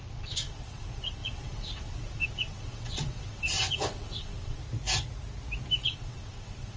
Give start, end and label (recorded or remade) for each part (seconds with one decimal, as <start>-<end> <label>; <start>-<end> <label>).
0.0-4.6 remade; 4.6-5.8 recorded; 5.8-6.8 remade

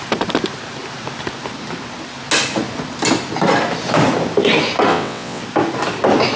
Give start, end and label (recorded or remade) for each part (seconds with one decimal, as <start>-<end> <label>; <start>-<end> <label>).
0.0-4.9 recorded; 4.9-5.4 remade; 5.4-6.4 recorded

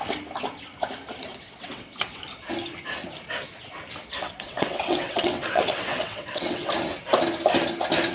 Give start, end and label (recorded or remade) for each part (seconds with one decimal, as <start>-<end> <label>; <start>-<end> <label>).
0.0-1.3 recorded; 1.3-2.2 remade; 2.2-4.2 recorded; 4.2-6.7 remade; 6.7-8.1 recorded

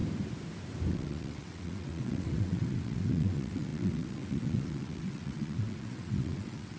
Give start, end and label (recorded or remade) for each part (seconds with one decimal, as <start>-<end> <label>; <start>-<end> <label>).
0.0-0.9 recorded; 0.9-6.8 remade

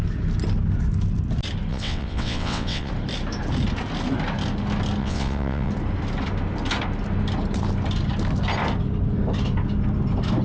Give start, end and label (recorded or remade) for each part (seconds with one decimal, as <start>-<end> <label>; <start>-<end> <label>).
0.0-1.7 recorded; 1.7-2.9 remade; 2.9-5.0 recorded; 5.0-5.7 remade; 5.7-10.4 recorded

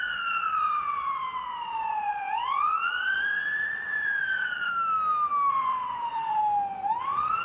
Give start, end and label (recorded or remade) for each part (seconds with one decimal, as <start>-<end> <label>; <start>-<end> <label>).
0.0-4.7 remade; 4.7-5.5 recorded; 5.5-6.4 remade; 6.4-7.0 recorded; 7.0-7.4 remade